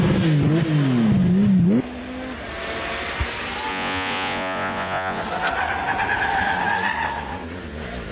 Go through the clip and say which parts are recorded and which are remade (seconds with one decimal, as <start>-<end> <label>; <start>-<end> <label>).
0.0-3.7 recorded; 3.7-5.2 remade; 5.2-8.1 recorded